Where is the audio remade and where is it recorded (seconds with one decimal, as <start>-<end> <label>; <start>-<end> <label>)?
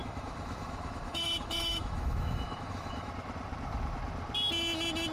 0.0-3.1 remade; 3.1-5.1 recorded